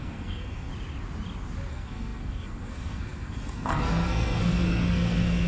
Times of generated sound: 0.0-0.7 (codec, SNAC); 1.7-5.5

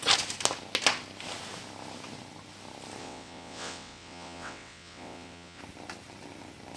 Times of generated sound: 3.0-5.6 (vocoder, WaveNeXt)

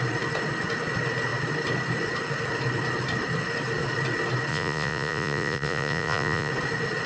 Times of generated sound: 4.5-6.5 (vocoder, Vocos)

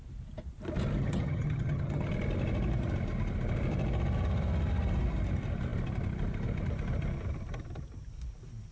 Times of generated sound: 1.0-2.1 (vocoder, HiFi-GAN)

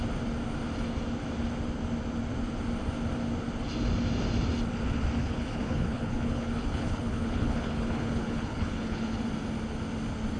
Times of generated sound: 5.2-9.2 (codec, HILCodec)

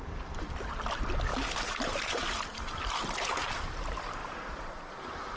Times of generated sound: none